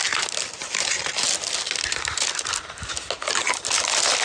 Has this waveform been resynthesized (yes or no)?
no